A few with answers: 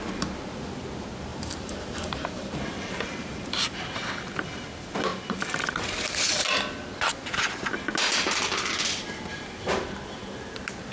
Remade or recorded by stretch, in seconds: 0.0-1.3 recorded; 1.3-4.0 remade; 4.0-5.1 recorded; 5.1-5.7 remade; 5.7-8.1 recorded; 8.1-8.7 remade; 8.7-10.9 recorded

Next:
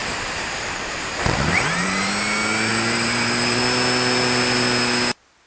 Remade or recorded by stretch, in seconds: 0.0-2.1 remade; 2.1-2.7 recorded; 2.7-3.6 remade; 3.6-5.5 recorded

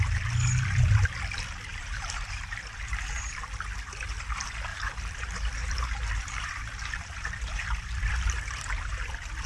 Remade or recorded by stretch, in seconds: 0.0-1.7 recorded; 1.7-2.9 remade; 2.9-4.7 recorded; 4.7-9.5 remade